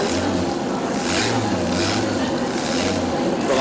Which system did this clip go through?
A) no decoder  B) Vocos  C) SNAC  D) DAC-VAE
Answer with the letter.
A